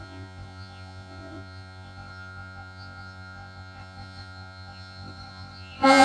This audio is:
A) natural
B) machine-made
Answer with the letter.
B